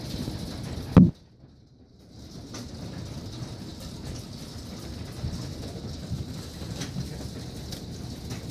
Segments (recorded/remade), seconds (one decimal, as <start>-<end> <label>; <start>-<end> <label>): 0.0-3.7 recorded; 3.7-4.8 remade; 4.8-8.5 recorded